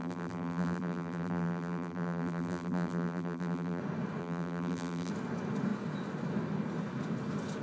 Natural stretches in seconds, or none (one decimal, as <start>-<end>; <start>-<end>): 3.8-4.2; 5.1-7.6